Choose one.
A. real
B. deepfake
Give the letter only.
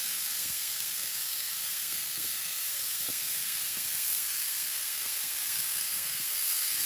B